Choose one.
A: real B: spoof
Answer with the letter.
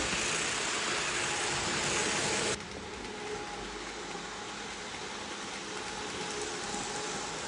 A